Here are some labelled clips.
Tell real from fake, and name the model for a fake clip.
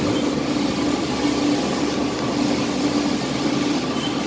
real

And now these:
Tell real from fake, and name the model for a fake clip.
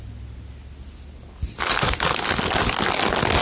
real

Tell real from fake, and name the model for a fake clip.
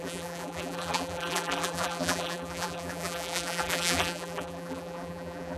fake, vocoder, BigVGAN v2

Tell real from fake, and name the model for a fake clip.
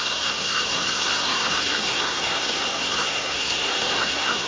fake, codec, SNAC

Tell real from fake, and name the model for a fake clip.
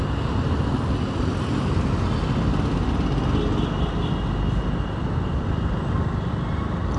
real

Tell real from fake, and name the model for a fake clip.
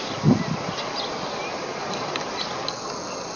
real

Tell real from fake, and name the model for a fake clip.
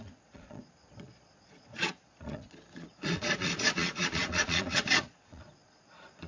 fake, vocoder, Vocos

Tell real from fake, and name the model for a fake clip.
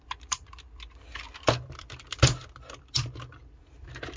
fake, vocoder, BigVGAN v2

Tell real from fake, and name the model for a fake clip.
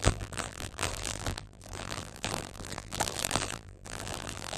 fake, vocoder, BigVGAN v2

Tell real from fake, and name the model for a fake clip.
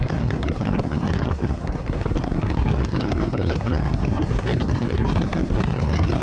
fake, codec, SNAC